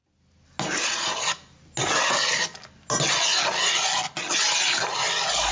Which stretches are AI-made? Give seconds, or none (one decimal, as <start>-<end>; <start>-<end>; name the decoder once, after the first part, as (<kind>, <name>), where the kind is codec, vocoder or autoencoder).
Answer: none